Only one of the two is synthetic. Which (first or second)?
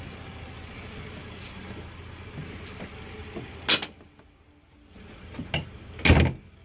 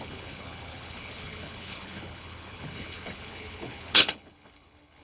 second